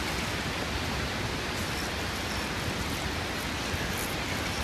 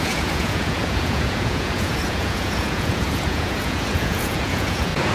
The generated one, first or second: second